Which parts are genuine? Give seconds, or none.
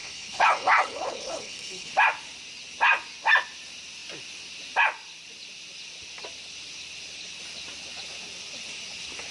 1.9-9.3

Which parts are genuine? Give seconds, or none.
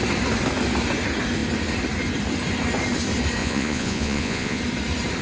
0.0-3.4; 4.6-5.2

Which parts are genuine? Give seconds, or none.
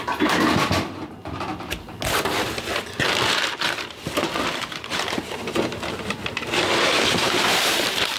1.5-4.6; 6.2-7.2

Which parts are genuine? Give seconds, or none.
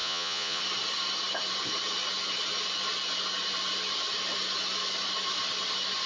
0.6-6.1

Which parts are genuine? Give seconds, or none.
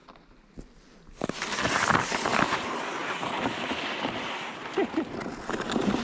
0.0-6.0